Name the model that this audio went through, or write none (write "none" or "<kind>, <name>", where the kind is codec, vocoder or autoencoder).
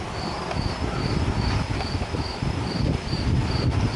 none